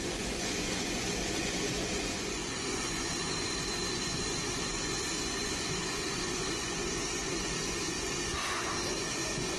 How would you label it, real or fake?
fake